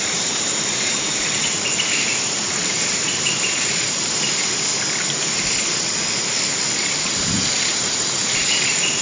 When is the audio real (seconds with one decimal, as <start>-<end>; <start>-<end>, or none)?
4.7-6.8